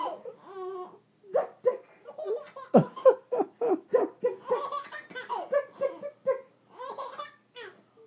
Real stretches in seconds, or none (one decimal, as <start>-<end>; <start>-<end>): 0.0-1.7; 2.4-2.8; 3.7-8.1